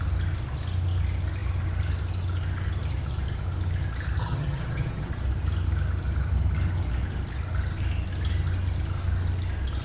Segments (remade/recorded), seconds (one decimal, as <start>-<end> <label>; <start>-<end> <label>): 0.0-4.2 recorded; 4.2-5.1 remade; 5.1-9.8 recorded

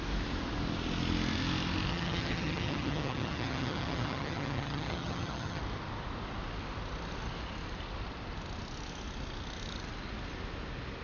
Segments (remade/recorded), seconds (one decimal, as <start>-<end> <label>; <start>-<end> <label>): 0.0-1.9 recorded; 1.9-5.6 remade; 5.6-11.0 recorded

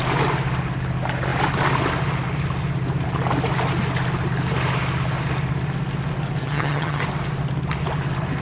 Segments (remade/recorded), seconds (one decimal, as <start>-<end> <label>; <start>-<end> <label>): 0.0-6.4 recorded; 6.4-7.0 remade; 7.0-8.4 recorded

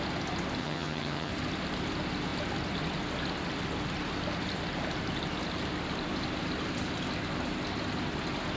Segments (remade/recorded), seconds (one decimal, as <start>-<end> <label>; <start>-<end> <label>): 0.0-0.6 recorded; 0.6-1.3 remade; 1.3-8.6 recorded